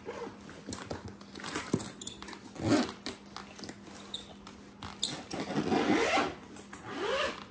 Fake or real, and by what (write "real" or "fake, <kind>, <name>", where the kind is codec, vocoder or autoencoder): real